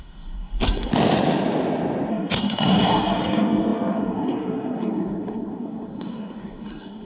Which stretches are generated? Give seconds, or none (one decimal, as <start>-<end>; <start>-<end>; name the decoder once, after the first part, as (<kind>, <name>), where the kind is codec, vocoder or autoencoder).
0.0-0.9 (codec, SNAC); 2.1-7.0